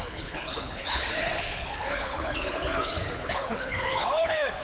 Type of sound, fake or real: fake